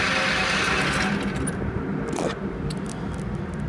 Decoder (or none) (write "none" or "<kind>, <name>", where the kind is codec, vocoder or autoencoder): none